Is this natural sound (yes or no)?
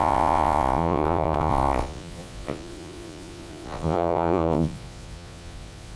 no